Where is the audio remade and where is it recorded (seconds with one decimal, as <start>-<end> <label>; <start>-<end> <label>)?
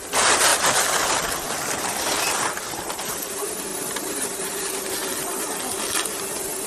0.0-3.7 recorded; 3.7-4.9 remade; 4.9-6.7 recorded